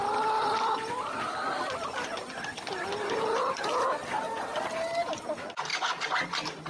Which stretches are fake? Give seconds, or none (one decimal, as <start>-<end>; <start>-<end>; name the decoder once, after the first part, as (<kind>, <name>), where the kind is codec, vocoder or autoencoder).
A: 0.0-4.0 (vocoder, BigVGAN v2); 5.7-6.7